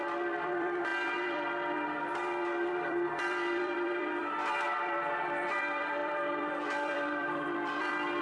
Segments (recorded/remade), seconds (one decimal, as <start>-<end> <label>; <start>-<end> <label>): 0.0-8.2 remade